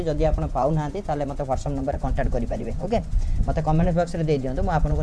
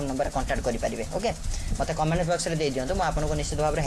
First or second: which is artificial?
first